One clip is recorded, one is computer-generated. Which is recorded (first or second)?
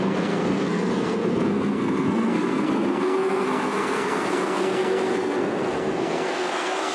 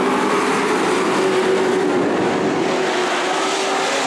second